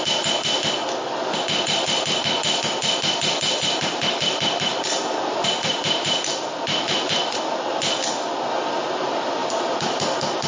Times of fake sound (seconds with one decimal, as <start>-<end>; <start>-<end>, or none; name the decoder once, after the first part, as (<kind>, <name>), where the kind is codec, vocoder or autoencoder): 3.5-7.7 (vocoder, BigVGAN v2); 9.4-10.0